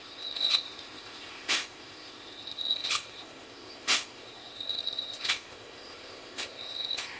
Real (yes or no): no